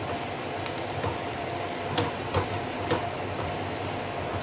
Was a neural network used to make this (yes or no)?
no